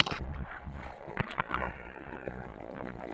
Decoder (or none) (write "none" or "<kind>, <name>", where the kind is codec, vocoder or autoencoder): vocoder, Vocos